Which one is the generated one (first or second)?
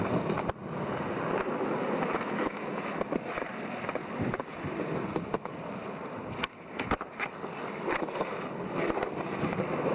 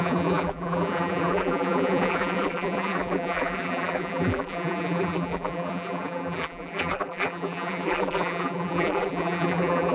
second